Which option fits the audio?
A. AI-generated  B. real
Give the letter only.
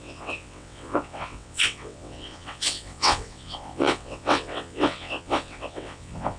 A